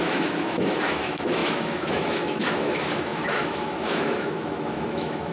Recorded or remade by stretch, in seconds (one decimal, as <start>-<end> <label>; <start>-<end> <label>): 0.0-5.3 remade